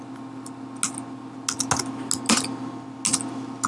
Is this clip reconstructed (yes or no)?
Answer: no